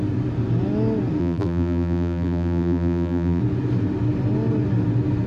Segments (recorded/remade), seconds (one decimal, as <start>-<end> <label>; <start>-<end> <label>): 0.0-1.2 recorded; 1.2-3.4 remade; 3.4-5.3 recorded